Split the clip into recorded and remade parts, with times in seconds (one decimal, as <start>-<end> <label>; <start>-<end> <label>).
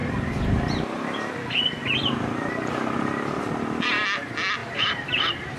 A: 0.0-3.4 remade; 3.4-4.6 recorded; 4.6-5.6 remade